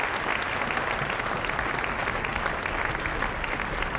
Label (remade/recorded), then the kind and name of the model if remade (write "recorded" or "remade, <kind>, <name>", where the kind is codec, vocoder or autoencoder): recorded